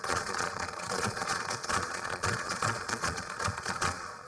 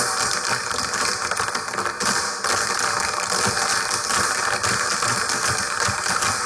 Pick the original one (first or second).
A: second